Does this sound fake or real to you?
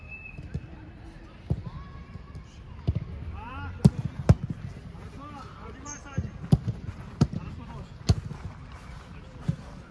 real